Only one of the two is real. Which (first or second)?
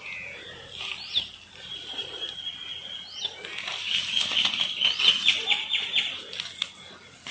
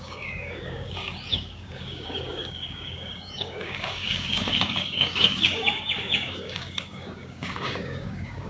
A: first